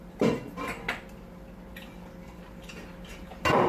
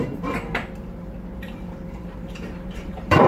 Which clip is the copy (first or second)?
second